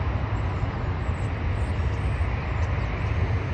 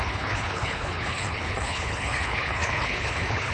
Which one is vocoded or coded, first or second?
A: second